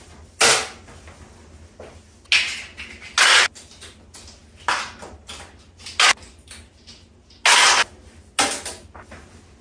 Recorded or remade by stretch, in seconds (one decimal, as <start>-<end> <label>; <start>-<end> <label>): 0.0-9.6 recorded